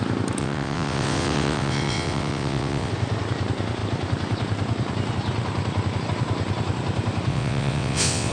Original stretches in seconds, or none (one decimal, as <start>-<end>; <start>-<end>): 0.0-0.4; 2.9-7.3